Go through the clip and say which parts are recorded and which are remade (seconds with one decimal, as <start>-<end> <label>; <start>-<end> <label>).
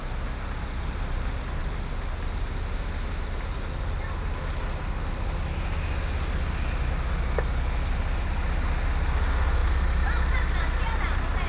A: 0.0-11.5 recorded